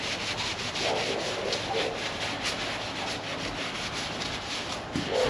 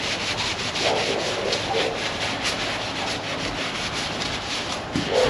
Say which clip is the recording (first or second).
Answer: first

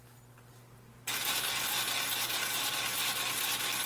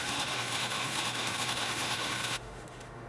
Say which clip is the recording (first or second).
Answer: first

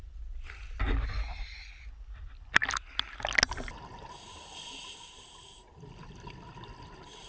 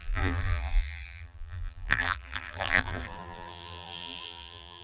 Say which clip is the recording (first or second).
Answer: first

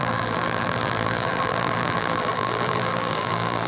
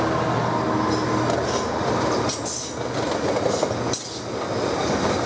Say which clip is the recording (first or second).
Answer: second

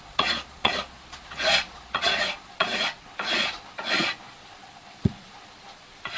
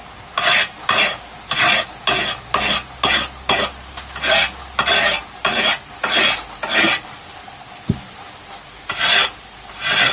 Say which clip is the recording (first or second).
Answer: second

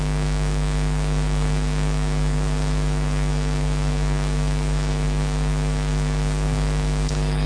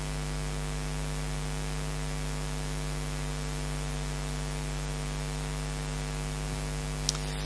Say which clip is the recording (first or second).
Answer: second